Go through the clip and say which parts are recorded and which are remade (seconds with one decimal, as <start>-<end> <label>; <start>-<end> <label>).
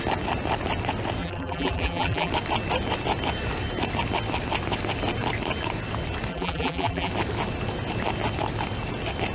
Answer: 0.0-1.2 recorded; 1.2-2.3 remade; 2.3-6.3 recorded; 6.3-7.1 remade; 7.1-9.3 recorded